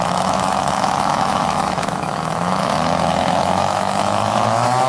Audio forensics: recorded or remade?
remade